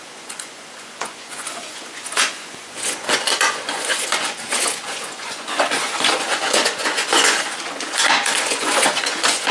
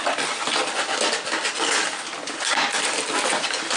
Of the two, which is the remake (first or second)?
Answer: first